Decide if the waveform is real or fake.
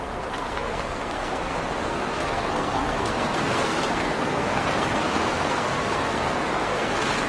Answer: fake